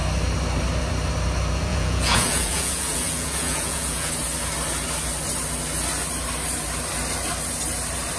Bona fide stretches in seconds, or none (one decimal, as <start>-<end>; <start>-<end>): 0.0-1.7; 4.1-8.2